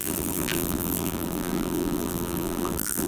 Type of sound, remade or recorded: remade